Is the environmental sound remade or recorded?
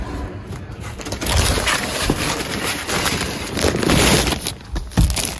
recorded